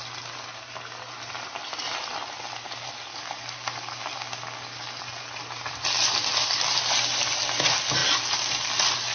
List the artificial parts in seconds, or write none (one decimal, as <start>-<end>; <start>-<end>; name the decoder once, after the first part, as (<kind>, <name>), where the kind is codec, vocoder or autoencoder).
3.1-5.0 (codec, DAC)